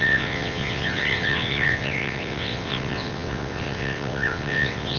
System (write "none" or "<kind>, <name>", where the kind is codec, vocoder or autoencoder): vocoder, WaveNeXt